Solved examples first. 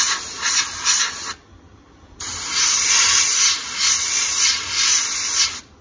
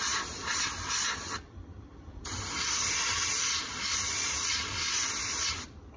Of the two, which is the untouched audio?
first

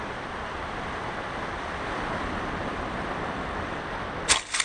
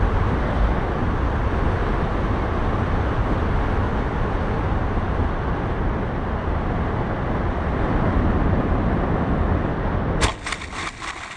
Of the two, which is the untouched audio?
second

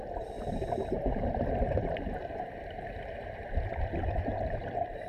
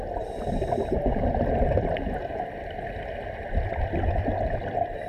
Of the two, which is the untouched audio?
second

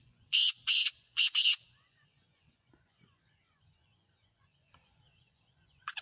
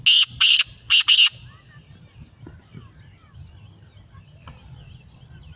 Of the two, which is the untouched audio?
second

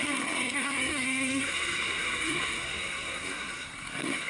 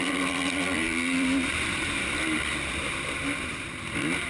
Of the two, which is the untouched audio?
second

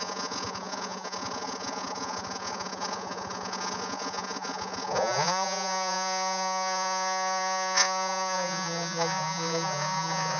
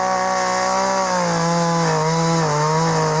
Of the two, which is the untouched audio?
second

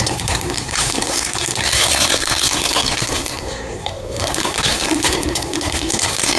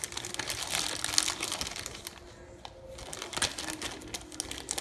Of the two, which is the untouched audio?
second